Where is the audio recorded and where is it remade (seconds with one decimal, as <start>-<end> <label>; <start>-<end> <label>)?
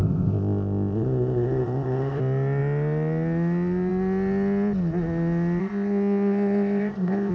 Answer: 0.0-2.2 remade; 2.2-5.6 recorded; 5.6-7.3 remade